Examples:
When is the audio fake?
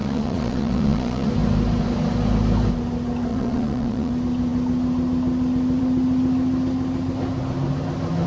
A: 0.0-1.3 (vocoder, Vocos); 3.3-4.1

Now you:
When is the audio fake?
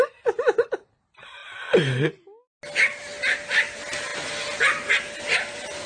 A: none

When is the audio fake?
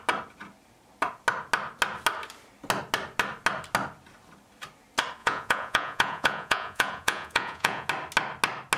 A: 5.2-7.9 (vocoder, Vocos)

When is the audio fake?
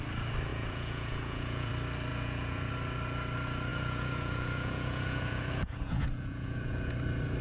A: 0.5-1.7 (vocoder, Vocos); 2.1-2.7; 3.7-6.9